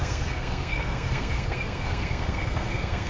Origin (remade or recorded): remade